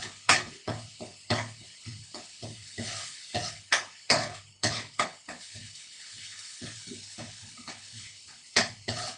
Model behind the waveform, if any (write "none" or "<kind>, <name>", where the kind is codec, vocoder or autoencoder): codec, HILCodec